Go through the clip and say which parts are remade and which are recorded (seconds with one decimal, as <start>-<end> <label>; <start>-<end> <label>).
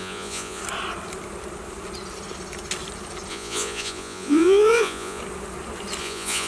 0.0-0.6 remade; 0.6-3.3 recorded; 3.3-5.2 remade; 5.2-6.0 recorded; 6.0-6.5 remade